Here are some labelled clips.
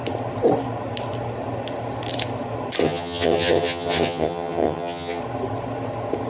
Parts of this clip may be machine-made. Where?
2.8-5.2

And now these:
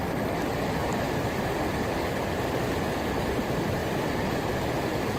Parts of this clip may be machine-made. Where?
none

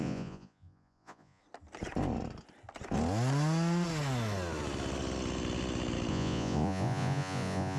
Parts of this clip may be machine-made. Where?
0.0-1.4; 6.1-7.8

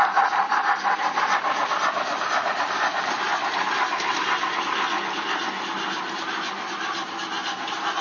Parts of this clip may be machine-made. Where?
none

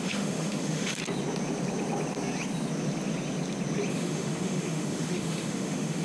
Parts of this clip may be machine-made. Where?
0.0-1.0; 3.9-6.0